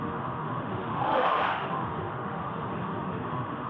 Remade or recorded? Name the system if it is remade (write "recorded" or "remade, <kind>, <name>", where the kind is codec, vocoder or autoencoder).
remade, autoencoder, DAC-VAE